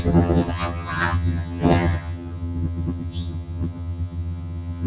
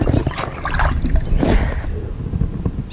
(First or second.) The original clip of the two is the second